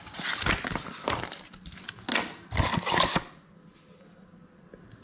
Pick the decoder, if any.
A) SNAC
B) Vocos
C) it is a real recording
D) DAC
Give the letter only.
C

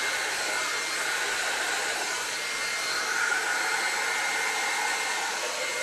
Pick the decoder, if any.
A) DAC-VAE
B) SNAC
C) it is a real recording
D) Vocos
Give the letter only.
C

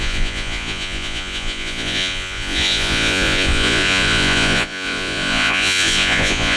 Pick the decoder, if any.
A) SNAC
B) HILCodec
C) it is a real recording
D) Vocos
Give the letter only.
D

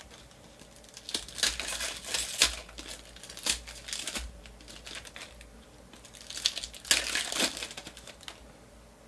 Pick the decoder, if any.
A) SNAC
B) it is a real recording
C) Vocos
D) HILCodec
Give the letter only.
B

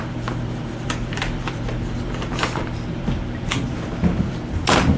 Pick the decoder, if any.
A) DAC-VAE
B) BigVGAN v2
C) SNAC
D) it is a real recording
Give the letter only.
B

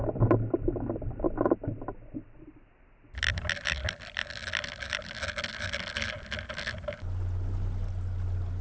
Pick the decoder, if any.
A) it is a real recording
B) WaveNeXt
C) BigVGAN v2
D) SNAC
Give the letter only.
A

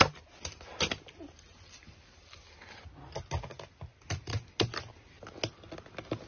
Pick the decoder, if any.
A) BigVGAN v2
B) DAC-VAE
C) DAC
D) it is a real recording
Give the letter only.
D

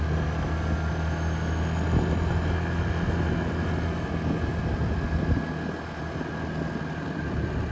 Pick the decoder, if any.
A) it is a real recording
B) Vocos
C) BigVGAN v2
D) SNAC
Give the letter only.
A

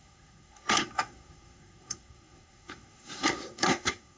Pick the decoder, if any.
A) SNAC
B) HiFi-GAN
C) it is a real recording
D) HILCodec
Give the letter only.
A